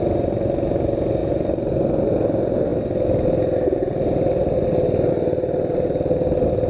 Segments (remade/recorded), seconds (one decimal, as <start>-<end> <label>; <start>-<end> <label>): 0.0-6.7 recorded